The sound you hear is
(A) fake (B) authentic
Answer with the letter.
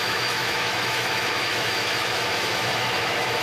A